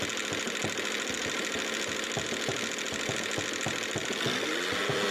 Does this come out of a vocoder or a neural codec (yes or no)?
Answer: no